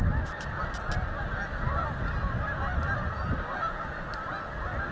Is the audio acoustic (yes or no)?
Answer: yes